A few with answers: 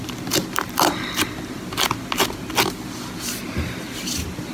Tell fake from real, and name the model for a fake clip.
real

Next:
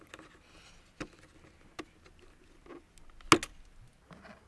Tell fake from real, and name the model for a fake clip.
real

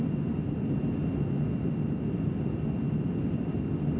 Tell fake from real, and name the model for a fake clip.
real